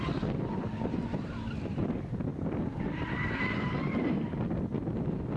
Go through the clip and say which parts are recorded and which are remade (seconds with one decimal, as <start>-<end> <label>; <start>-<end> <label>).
0.0-5.4 recorded